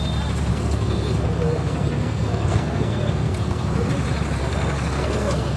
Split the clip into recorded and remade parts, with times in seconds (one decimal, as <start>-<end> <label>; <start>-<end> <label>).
0.0-0.5 recorded; 0.5-3.9 remade; 3.9-4.4 recorded; 4.4-5.6 remade